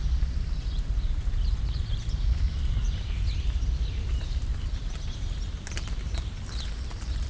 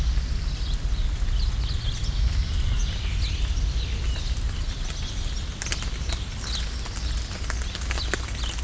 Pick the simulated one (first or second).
first